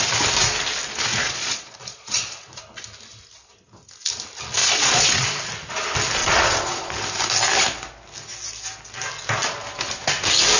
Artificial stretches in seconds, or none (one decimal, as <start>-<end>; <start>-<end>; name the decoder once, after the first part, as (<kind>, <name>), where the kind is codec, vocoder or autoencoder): 1.1-2.6 (vocoder, Vocos); 4.6-5.3; 6.2-6.9